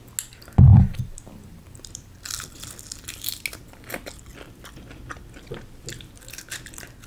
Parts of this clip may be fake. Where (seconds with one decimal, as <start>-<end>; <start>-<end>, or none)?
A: 0.7-2.6